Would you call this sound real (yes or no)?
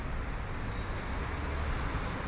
yes